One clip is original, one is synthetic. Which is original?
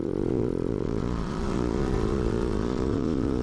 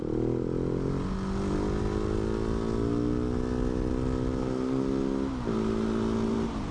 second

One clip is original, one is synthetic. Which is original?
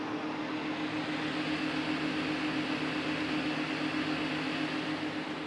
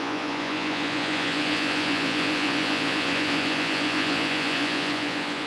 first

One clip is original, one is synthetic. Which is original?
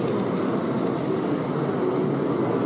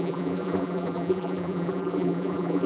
first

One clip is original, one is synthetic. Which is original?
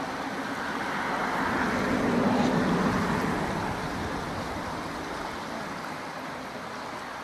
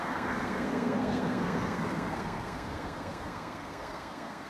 first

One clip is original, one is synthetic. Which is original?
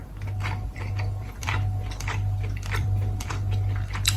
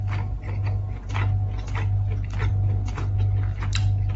second